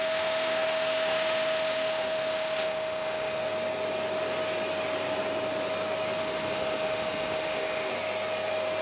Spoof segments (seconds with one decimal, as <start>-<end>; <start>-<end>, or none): 0.0-3.4; 6.2-7.9